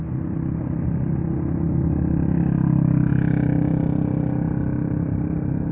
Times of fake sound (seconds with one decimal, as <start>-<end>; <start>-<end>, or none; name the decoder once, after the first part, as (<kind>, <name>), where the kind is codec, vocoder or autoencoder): none